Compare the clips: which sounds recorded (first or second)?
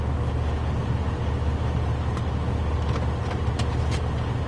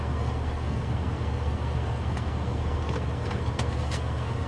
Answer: first